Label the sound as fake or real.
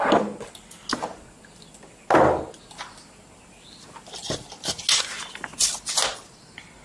real